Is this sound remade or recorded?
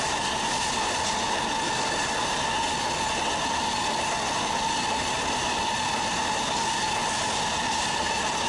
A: recorded